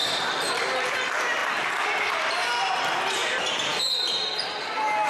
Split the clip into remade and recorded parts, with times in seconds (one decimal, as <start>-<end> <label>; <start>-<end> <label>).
0.0-5.1 recorded